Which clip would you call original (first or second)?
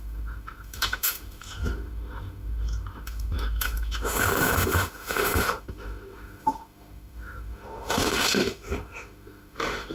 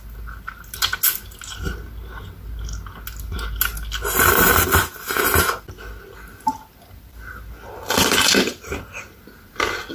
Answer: second